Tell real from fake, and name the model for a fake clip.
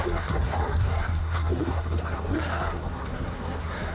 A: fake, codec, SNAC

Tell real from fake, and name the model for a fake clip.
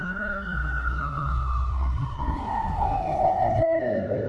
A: fake, codec, SNAC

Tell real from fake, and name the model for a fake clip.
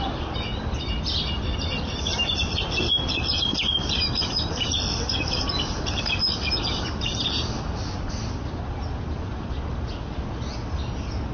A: real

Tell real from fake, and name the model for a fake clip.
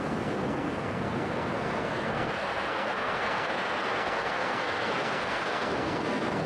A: fake, codec, SNAC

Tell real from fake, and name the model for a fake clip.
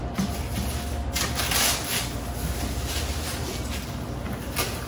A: real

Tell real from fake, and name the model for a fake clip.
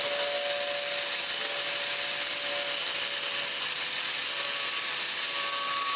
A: real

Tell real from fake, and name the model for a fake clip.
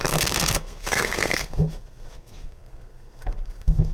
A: fake, codec, SNAC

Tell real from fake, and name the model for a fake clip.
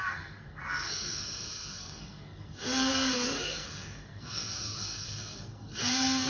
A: fake, codec, SNAC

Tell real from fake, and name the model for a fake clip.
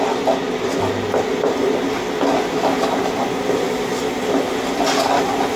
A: real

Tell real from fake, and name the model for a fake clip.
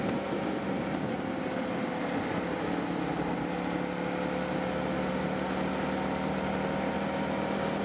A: real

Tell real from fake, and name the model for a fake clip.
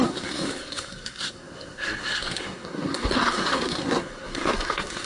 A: fake, codec, SNAC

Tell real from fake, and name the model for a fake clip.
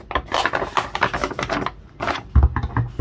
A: real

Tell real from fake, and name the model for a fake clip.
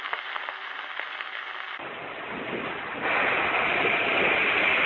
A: real